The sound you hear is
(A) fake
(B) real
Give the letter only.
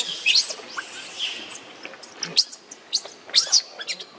B